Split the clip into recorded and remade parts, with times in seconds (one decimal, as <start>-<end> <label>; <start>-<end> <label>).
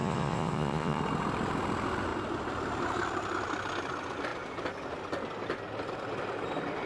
0.0-1.0 remade; 1.0-6.9 recorded